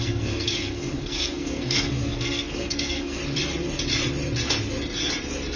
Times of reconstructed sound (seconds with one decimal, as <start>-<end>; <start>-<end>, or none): 0.0-3.2